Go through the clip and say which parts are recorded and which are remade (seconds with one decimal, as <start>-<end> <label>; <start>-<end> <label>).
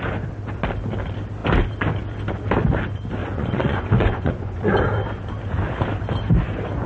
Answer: 0.0-3.2 recorded; 3.2-4.7 remade; 4.7-6.9 recorded